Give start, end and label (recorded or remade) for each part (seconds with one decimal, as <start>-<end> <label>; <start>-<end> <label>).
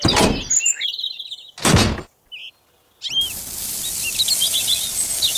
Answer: 0.0-5.4 recorded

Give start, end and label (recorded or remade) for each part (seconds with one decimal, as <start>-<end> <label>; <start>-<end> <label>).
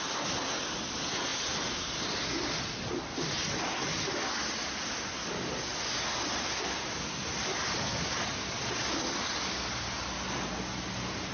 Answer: 0.0-11.3 recorded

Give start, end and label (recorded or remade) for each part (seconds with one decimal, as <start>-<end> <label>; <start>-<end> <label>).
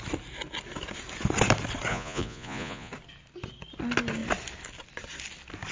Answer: 0.0-1.9 recorded; 1.9-2.9 remade; 2.9-5.7 recorded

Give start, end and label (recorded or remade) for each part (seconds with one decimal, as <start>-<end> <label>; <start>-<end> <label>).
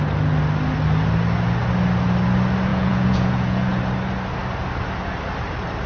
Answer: 0.0-2.7 recorded; 2.7-3.8 remade; 3.8-5.9 recorded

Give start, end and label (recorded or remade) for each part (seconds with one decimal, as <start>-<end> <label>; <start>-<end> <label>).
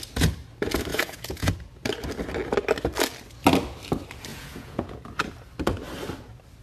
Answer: 0.0-0.9 recorded; 0.9-1.5 remade; 1.5-4.3 recorded; 4.3-5.0 remade; 5.0-6.6 recorded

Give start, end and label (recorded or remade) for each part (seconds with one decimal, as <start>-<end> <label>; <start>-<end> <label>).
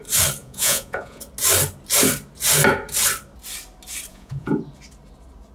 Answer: 0.0-0.4 recorded; 0.4-1.2 remade; 1.2-4.1 recorded; 4.1-4.6 remade; 4.6-5.5 recorded